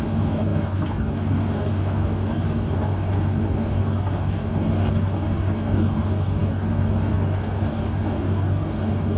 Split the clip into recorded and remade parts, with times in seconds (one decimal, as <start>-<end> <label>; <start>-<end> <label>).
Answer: 0.0-9.2 remade